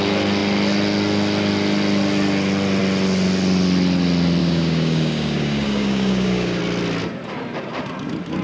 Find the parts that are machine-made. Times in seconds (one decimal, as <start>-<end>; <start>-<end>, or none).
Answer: 4.4-6.6